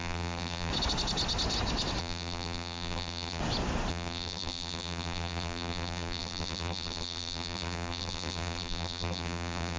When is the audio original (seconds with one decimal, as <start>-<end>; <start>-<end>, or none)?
0.7-2.0; 3.4-3.9